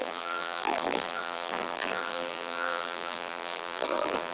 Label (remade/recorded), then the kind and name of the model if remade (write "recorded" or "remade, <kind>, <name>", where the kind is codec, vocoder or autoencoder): remade, vocoder, BigVGAN v2